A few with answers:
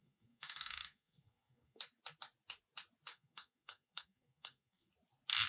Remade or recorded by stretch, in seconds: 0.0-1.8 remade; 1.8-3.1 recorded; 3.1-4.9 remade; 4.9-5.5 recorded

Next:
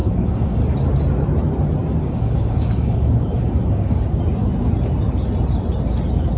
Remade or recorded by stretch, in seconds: 0.0-0.6 remade; 0.6-2.0 recorded; 2.0-4.2 remade; 4.2-6.4 recorded

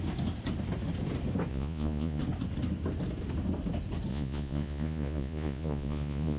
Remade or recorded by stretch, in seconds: 0.0-1.5 recorded; 1.5-2.2 remade; 2.2-4.1 recorded; 4.1-6.4 remade

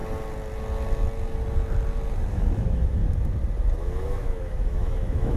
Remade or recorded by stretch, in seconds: 0.0-2.3 recorded; 2.3-3.0 remade; 3.0-3.8 recorded; 3.8-5.4 remade

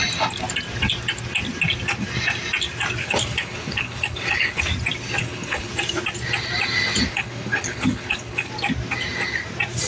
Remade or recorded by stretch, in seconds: 0.0-3.0 recorded; 3.0-4.6 remade; 4.6-5.2 recorded; 5.2-5.7 remade; 5.7-7.1 recorded; 7.1-8.5 remade; 8.5-9.9 recorded

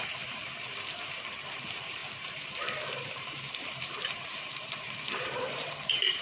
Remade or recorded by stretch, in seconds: 0.0-0.4 remade; 0.4-1.0 recorded; 1.0-6.2 remade